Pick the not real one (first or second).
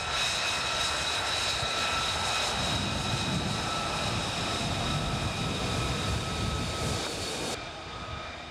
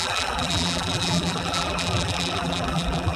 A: second